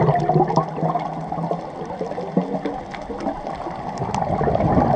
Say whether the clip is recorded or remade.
recorded